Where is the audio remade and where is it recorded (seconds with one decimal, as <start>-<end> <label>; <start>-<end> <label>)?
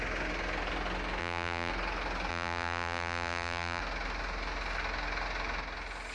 0.0-1.2 recorded; 1.2-1.7 remade; 1.7-2.3 recorded; 2.3-3.8 remade; 3.8-6.1 recorded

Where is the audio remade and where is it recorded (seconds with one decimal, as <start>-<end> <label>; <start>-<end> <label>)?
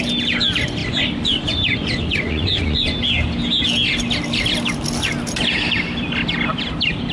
0.0-0.8 recorded; 0.8-2.9 remade; 2.9-7.1 recorded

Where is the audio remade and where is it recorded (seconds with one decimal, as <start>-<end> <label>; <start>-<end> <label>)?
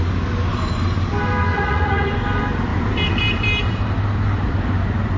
0.0-1.5 recorded; 1.5-2.1 remade; 2.1-5.2 recorded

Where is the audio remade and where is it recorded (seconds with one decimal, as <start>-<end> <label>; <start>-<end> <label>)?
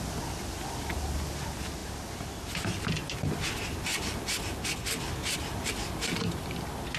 0.0-7.0 recorded